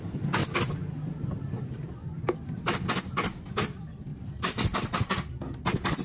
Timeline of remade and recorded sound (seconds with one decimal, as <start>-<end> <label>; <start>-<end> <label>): 0.0-4.1 recorded; 4.1-5.1 remade; 5.1-6.0 recorded